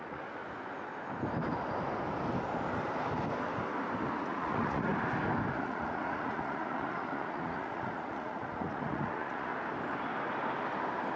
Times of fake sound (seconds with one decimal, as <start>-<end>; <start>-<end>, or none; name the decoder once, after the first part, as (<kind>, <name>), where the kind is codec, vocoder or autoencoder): 0.0-0.4 (vocoder, Vocos); 4.2-4.9; 5.5-9.5